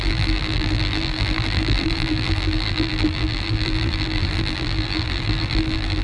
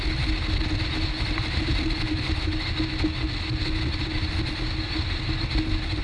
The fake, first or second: first